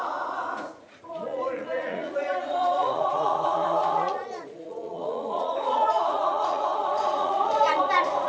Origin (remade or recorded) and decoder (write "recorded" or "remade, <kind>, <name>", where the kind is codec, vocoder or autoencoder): remade, vocoder, Vocos